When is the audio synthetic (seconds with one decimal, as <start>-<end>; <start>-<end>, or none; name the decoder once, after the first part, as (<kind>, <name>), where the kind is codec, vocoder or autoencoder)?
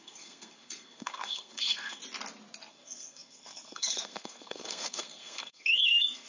0.0-2.0 (codec, SNAC); 2.7-6.3